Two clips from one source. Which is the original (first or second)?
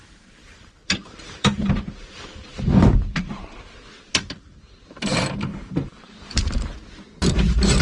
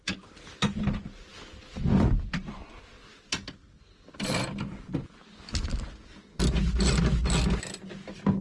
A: second